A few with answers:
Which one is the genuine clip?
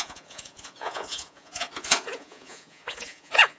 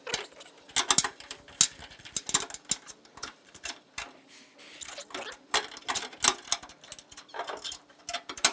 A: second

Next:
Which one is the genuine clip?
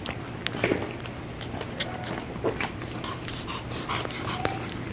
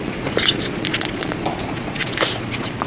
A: first